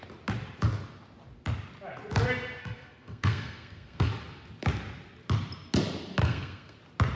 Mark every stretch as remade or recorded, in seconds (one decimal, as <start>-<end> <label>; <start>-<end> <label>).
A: 0.0-2.6 recorded; 2.6-4.1 remade; 4.1-6.2 recorded; 6.2-6.8 remade; 6.8-7.2 recorded